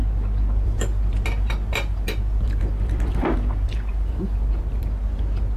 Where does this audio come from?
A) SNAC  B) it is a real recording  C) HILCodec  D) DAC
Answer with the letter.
B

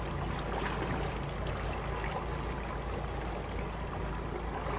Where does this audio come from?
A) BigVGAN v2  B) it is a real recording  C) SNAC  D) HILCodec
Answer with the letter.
B